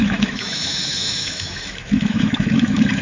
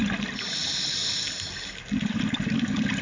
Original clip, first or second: second